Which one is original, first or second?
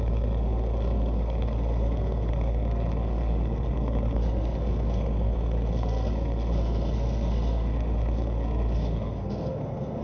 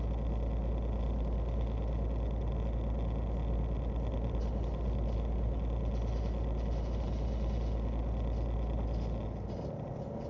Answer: second